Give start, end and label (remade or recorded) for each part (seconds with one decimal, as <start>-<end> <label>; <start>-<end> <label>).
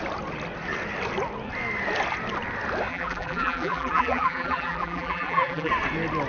0.0-2.9 recorded; 2.9-5.7 remade; 5.7-6.3 recorded